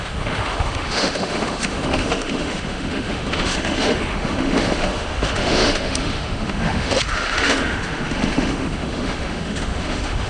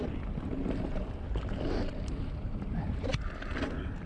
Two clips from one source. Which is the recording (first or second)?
second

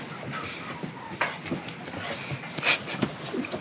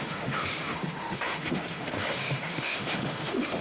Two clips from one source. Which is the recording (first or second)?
first